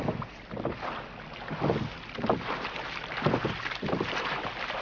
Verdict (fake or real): real